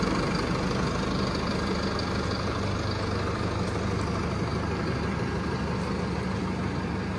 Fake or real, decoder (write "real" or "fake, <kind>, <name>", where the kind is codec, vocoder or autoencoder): real